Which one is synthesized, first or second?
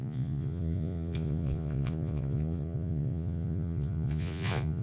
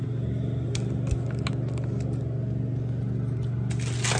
first